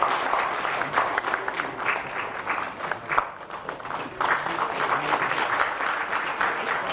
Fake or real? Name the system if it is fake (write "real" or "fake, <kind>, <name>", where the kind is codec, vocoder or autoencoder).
real